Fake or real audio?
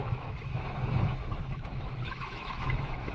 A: fake